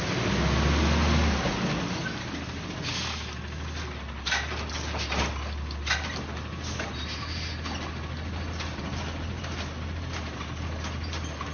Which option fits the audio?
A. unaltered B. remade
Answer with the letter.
A